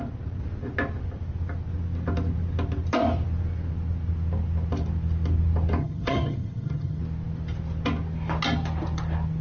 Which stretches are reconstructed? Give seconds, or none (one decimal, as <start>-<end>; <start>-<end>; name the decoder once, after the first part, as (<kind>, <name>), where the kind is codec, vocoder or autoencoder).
5.8-7.0 (vocoder, HiFi-GAN)